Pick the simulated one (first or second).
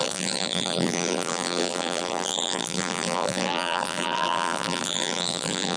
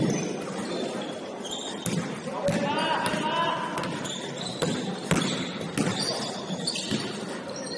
first